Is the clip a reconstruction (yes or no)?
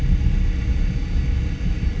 no